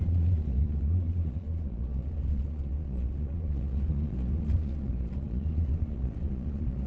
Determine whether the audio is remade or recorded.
remade